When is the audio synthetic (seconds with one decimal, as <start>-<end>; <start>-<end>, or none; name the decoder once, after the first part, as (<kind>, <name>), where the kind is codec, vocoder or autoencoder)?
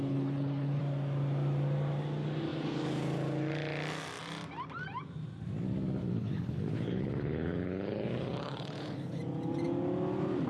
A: 0.0-0.8 (codec, HILCodec); 6.0-9.2